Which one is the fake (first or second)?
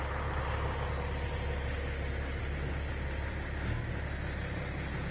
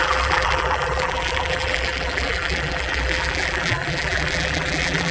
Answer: second